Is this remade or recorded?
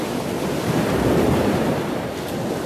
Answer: recorded